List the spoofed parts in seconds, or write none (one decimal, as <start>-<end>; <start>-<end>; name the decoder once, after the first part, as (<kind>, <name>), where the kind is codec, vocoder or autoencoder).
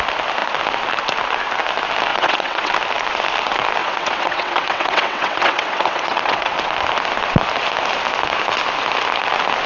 2.1-2.7 (vocoder, WaveNeXt); 3.8-6.7